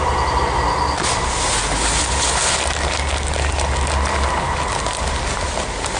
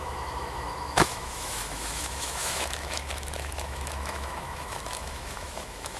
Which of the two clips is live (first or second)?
first